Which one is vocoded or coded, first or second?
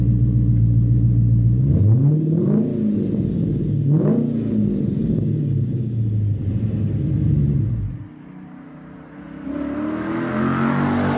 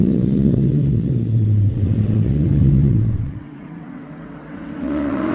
second